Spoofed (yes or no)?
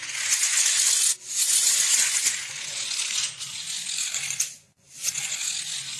yes